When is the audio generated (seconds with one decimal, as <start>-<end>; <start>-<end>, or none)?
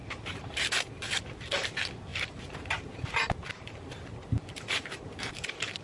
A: 0.0-1.7; 2.1-5.8